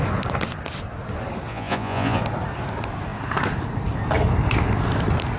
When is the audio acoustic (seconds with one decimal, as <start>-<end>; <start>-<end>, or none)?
0.0-1.5; 2.2-5.4